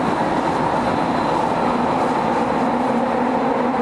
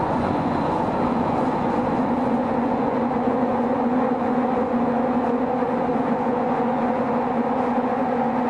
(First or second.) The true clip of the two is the first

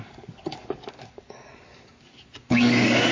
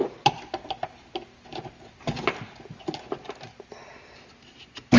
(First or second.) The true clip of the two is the second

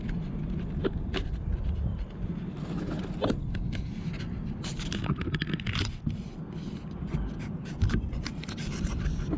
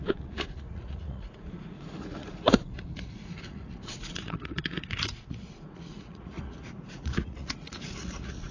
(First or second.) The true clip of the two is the first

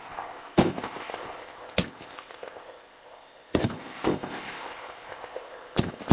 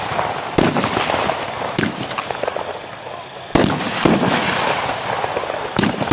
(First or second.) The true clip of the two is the second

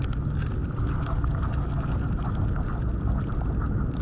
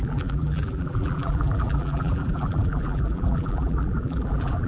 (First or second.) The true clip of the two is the first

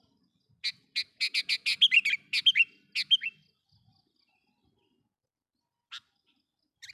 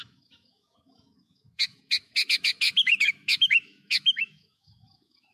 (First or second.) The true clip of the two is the first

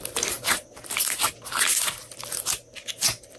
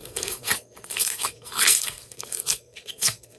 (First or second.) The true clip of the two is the first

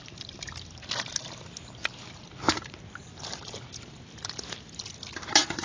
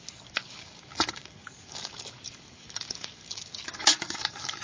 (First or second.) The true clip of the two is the first